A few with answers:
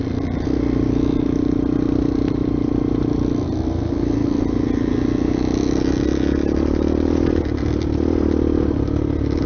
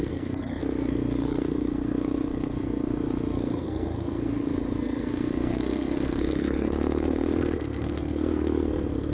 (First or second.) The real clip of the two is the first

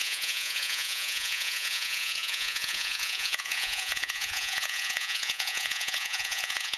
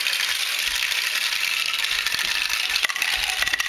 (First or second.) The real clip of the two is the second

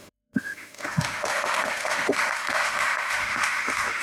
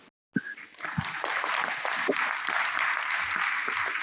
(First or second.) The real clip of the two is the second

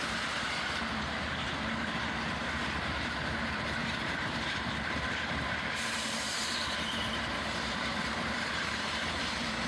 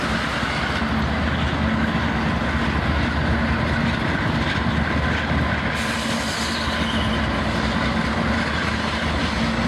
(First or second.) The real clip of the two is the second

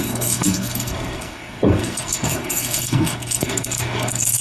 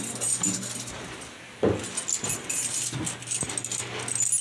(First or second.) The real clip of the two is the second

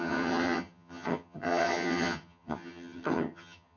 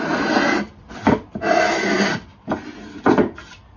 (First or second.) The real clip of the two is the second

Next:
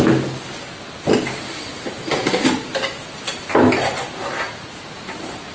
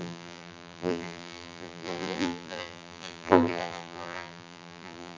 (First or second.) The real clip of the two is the first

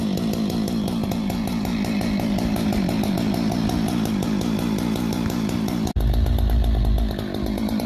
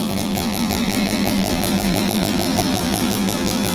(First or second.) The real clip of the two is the first